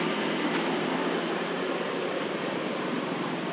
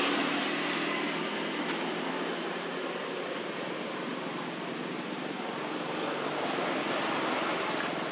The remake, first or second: first